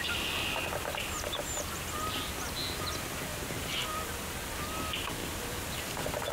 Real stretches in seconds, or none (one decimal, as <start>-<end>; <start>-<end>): 0.0-0.9; 1.6-3.3; 4.2-5.2